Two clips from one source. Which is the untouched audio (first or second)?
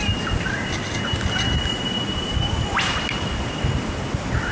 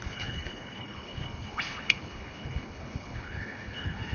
first